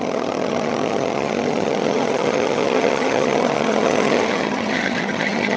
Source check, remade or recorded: remade